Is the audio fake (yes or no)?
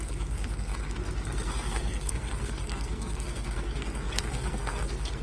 yes